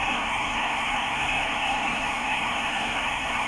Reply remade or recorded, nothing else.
remade